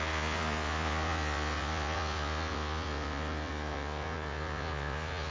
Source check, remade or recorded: remade